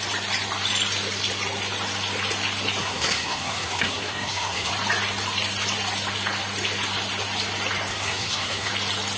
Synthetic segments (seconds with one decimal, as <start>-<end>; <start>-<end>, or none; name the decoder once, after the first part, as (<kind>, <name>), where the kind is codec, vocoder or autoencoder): 2.8-4.7 (codec, SNAC); 7.9-8.7